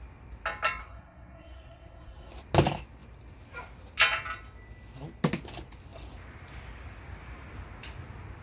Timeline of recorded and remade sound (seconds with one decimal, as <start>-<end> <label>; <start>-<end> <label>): 0.0-0.8 recorded; 0.8-2.3 remade; 2.3-8.4 recorded